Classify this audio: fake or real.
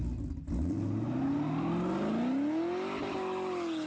real